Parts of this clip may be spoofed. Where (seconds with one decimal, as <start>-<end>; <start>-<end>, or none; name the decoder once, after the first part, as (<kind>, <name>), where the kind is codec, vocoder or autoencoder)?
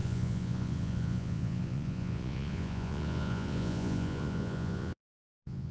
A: 0.0-5.7 (vocoder, Vocos)